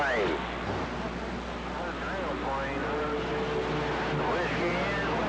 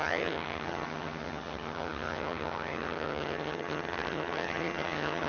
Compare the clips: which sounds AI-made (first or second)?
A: second